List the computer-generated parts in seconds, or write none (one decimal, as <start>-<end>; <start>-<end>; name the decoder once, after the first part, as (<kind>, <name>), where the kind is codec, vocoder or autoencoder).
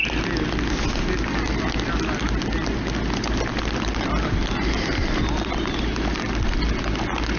none